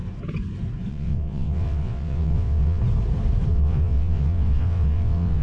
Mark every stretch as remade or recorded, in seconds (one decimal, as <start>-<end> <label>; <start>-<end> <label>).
0.0-0.9 recorded; 0.9-2.8 remade; 2.8-3.5 recorded; 3.5-5.4 remade